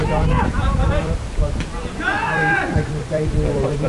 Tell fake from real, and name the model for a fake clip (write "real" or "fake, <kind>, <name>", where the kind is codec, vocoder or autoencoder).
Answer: fake, vocoder, BigVGAN v2